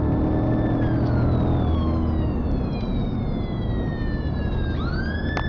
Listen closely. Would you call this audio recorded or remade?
recorded